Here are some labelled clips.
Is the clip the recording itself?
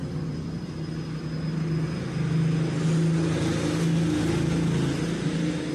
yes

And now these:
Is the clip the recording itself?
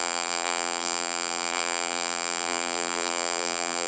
no